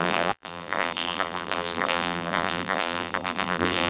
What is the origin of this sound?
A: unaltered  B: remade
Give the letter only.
B